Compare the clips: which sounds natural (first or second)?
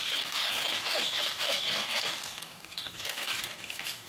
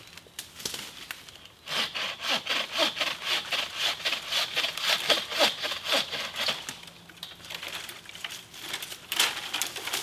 second